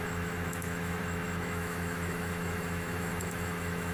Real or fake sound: fake